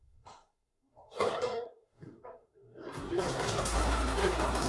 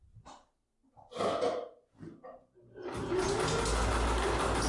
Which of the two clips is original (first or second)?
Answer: second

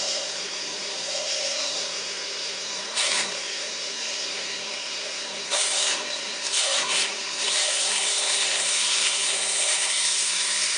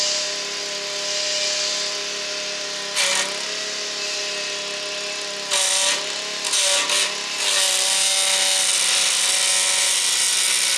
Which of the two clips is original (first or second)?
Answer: second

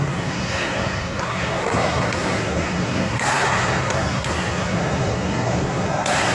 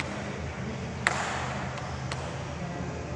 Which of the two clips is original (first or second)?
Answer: second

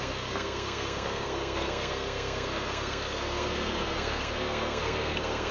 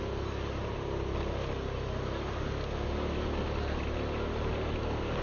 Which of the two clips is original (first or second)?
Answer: second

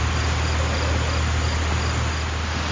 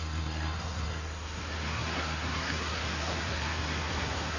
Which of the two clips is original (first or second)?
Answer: first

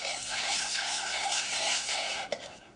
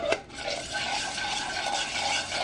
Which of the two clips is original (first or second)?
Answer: second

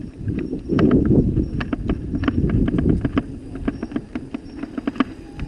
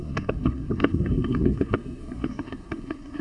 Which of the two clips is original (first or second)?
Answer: first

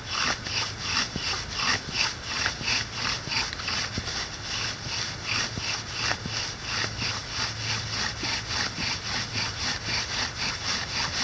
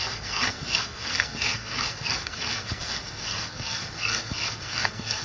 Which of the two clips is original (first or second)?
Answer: first